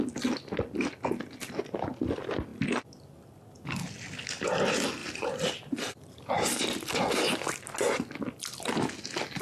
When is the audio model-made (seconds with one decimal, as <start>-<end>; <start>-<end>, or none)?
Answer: 5.0-6.3